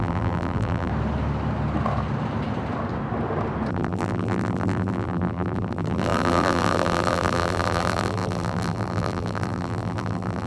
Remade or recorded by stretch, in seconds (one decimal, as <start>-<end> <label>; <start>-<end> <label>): 0.0-0.9 remade; 0.9-3.7 recorded; 3.7-10.5 remade